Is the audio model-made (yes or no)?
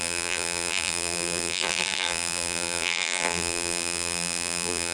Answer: yes